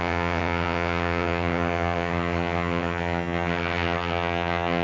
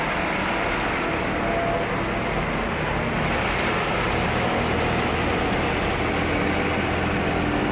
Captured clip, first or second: second